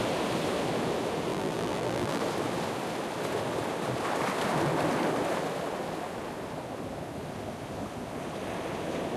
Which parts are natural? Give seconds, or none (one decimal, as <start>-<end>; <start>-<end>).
0.0-1.3; 2.2-9.2